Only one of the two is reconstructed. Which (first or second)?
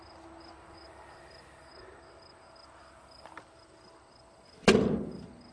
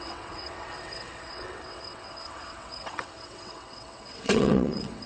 second